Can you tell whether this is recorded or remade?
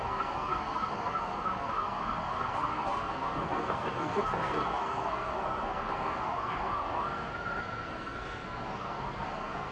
remade